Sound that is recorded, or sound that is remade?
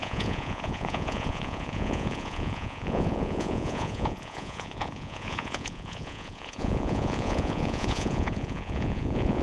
remade